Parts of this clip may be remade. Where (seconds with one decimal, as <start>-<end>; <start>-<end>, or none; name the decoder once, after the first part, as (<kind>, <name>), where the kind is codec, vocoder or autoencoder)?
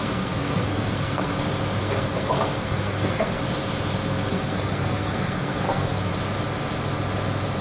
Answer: 0.0-1.3 (codec, SNAC); 1.8-3.4; 4.3-6.1